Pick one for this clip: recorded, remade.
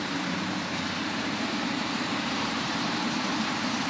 remade